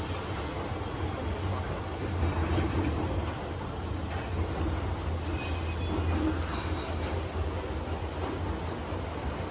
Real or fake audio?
real